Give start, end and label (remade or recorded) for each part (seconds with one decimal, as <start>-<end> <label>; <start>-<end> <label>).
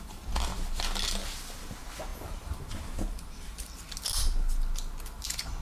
0.0-2.1 recorded; 2.1-3.7 remade; 3.7-5.6 recorded